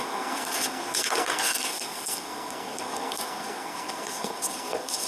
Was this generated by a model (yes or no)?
yes